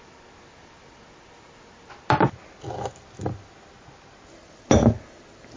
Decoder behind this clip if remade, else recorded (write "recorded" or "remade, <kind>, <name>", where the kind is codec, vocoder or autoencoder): recorded